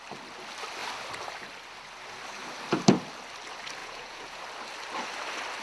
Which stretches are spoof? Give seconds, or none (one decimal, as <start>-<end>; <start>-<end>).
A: 3.8-4.4